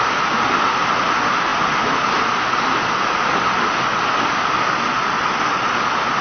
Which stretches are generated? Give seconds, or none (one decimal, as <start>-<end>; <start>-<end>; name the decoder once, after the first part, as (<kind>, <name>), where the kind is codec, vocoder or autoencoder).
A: none